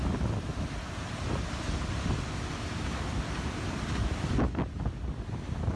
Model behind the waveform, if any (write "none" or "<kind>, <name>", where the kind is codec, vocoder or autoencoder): none